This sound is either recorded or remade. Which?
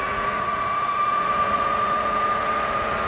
remade